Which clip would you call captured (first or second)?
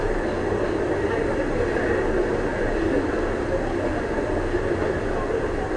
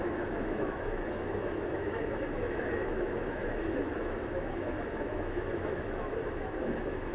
first